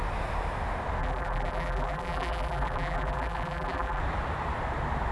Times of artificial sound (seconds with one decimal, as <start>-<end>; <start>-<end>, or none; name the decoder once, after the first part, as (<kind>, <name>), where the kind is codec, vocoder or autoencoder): 1.0-4.0 (vocoder, BigVGAN v2)